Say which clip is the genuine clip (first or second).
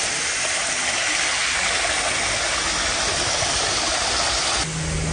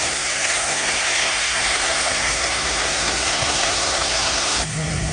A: first